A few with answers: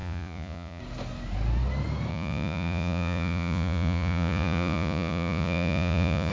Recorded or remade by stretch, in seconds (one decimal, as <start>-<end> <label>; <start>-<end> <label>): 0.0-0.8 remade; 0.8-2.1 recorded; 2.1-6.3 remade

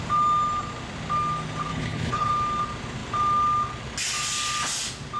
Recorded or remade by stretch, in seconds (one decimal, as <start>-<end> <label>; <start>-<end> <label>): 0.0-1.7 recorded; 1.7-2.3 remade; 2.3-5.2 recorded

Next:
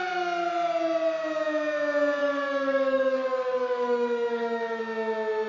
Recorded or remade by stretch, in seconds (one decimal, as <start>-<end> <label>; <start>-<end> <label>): 0.0-2.2 recorded; 2.2-4.8 remade; 4.8-5.5 recorded